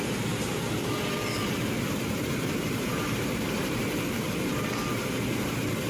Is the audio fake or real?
fake